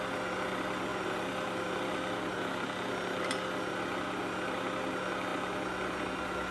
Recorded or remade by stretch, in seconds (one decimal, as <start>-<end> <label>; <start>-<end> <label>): 0.0-6.5 recorded

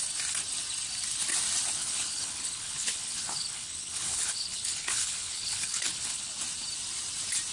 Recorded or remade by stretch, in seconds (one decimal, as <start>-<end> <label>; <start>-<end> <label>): 0.0-1.8 recorded; 1.8-6.3 remade; 6.3-7.5 recorded

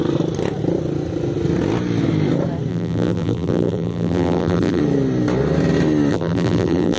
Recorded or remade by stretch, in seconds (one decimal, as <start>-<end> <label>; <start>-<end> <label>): 0.0-2.7 recorded; 2.7-4.8 remade; 4.8-6.1 recorded; 6.1-7.0 remade